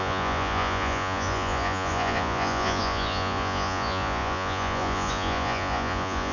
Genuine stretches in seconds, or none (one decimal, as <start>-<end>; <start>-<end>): none